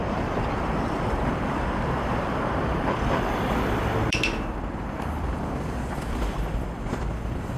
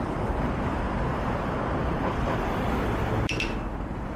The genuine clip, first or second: second